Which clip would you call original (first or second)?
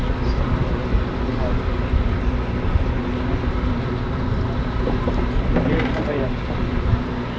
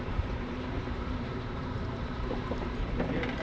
first